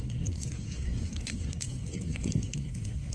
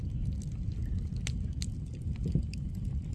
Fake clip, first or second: first